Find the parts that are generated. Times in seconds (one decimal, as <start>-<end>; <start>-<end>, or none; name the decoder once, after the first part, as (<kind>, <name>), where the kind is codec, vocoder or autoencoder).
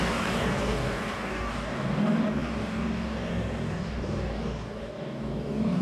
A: 0.0-5.8 (codec, DAC)